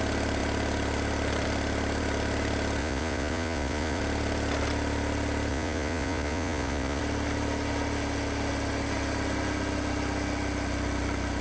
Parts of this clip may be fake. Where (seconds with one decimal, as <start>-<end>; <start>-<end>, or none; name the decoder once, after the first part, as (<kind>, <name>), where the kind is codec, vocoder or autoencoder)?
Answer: 2.8-4.0 (vocoder, Vocos); 5.5-7.0